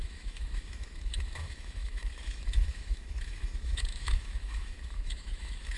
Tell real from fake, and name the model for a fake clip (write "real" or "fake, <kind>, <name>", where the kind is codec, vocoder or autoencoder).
fake, autoencoder, DAC-VAE